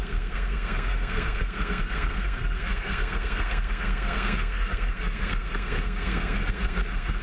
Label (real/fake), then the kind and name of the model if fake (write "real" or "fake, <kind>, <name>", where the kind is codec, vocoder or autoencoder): fake, codec, SNAC